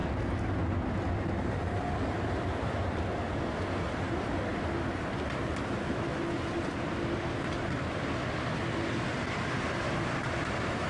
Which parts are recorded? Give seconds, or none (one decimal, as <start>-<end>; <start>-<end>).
0.0-10.9